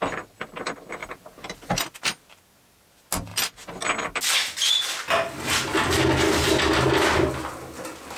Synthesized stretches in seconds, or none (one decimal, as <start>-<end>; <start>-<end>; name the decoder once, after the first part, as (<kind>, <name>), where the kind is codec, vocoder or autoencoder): none

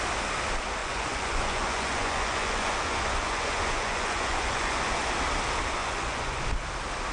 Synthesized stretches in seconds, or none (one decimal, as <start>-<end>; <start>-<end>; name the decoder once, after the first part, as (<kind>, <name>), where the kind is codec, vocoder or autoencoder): 0.8-5.1 (vocoder, Vocos); 5.8-6.4

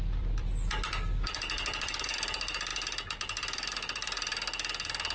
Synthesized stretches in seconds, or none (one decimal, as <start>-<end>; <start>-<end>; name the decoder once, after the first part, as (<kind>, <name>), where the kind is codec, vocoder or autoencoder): 0.0-2.1 (vocoder, BigVGAN v2); 2.7-4.3

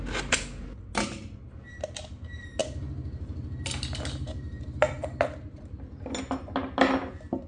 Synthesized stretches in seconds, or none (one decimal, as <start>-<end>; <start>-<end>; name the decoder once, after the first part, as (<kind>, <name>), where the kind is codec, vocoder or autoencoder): none

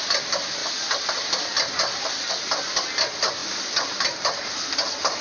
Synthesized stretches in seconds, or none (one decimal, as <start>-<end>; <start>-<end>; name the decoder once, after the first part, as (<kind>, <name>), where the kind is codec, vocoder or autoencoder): none

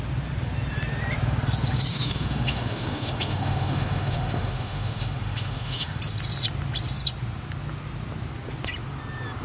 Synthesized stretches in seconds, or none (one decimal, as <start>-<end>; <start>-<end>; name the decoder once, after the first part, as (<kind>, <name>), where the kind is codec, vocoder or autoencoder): 1.9-6.0 (autoencoder, DAC-VAE)